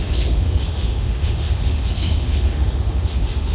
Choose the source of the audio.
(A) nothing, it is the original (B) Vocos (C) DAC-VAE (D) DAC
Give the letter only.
C